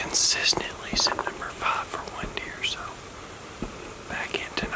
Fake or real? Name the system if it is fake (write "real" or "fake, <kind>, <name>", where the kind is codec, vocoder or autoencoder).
real